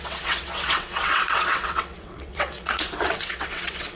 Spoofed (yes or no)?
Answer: yes